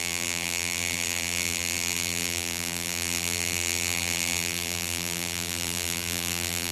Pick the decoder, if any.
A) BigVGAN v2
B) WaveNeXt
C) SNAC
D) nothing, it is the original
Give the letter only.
A